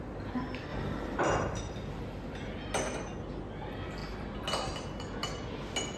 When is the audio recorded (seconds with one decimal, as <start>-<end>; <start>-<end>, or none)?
0.0-6.0